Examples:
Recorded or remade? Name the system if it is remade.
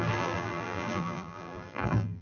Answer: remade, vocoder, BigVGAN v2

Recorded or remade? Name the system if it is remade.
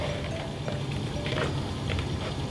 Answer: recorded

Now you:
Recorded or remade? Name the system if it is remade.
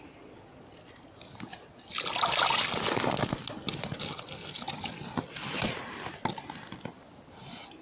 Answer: recorded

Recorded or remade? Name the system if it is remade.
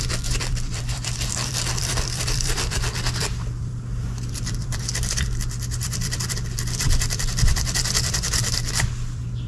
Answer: remade, vocoder, BigVGAN v2